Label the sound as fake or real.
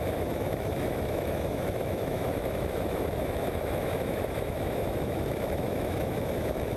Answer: fake